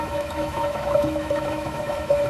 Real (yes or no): no